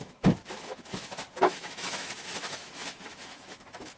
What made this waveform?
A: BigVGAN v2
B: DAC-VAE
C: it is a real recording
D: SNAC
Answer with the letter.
B